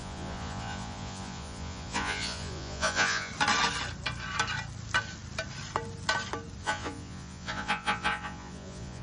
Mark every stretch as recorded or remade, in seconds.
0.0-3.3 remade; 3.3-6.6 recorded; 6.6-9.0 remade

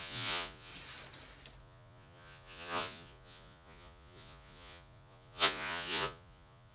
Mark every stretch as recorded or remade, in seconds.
0.0-0.7 remade; 0.7-1.6 recorded; 1.6-6.7 remade

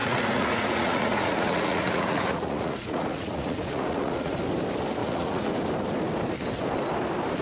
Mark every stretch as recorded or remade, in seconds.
0.0-4.4 remade; 4.4-5.0 recorded; 5.0-5.5 remade; 5.5-7.4 recorded

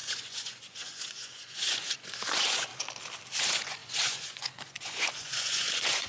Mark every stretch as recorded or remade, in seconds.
0.0-2.7 remade; 2.7-3.4 recorded; 3.4-6.1 remade

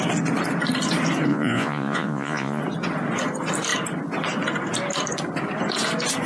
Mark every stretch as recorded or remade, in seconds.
0.0-1.3 recorded; 1.3-2.6 remade; 2.6-6.3 recorded

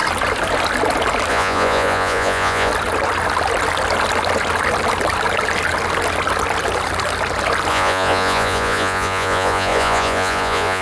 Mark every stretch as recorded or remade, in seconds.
0.0-1.3 recorded; 1.3-2.7 remade; 2.7-7.7 recorded; 7.7-10.8 remade

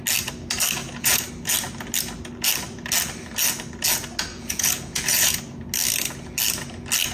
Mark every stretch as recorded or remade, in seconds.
0.0-0.8 recorded; 0.8-1.3 remade; 1.3-4.3 recorded; 4.3-5.4 remade; 5.4-7.1 recorded

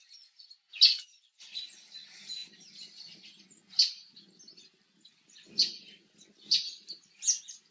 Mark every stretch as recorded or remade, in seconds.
0.0-7.7 recorded